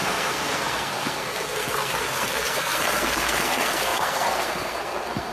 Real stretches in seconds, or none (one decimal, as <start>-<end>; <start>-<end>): none